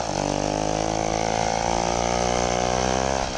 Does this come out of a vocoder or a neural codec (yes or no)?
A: no